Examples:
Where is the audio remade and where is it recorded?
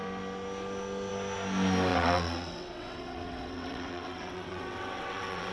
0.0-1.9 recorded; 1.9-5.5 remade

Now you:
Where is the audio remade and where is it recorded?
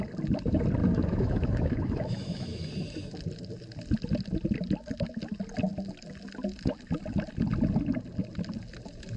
0.0-0.8 recorded; 0.8-2.7 remade; 2.7-9.2 recorded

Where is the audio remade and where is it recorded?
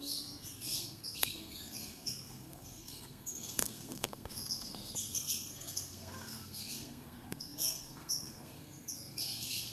0.0-9.7 remade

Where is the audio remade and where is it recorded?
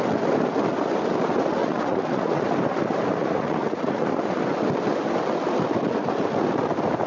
0.0-1.6 recorded; 1.6-2.4 remade; 2.4-3.2 recorded; 3.2-4.1 remade; 4.1-7.1 recorded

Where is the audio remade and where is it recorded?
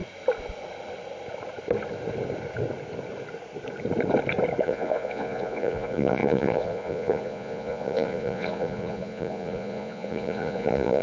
0.0-4.6 recorded; 4.6-11.0 remade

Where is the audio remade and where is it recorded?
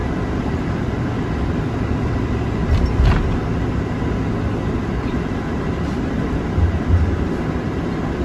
0.0-2.3 remade; 2.3-8.2 recorded